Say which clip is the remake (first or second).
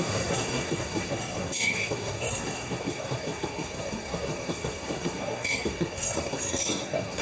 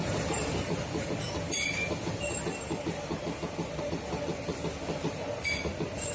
first